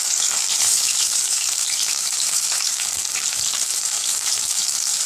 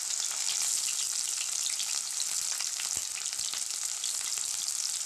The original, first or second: second